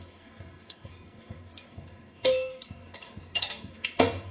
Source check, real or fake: fake